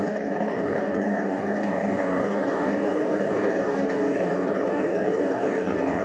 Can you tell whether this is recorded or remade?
remade